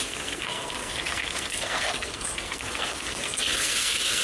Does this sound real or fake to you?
fake